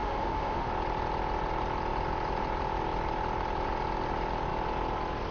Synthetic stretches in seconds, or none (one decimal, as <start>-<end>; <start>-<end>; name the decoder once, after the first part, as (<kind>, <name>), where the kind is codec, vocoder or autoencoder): 0.0-0.7 (autoencoder, DAC-VAE)